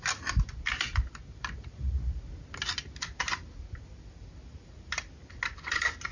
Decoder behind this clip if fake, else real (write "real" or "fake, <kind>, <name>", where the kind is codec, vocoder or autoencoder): real